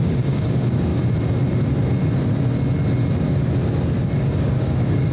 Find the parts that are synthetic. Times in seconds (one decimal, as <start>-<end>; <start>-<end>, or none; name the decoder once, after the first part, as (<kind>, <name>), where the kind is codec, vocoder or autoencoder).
0.0-0.9 (codec, DAC); 4.0-5.1